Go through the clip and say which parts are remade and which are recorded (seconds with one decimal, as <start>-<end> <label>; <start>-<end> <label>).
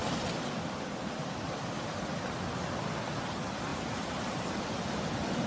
0.0-3.7 recorded; 3.7-4.9 remade; 4.9-5.5 recorded